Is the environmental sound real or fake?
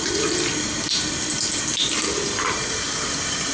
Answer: real